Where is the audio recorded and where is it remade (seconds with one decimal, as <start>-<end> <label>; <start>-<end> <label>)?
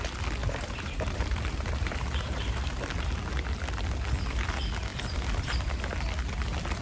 0.0-0.4 recorded; 0.4-2.8 remade; 2.8-4.9 recorded; 4.9-5.8 remade; 5.8-6.8 recorded